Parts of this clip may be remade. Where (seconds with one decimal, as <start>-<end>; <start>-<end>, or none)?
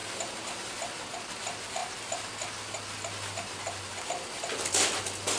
none